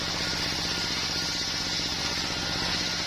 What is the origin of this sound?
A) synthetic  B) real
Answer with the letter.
B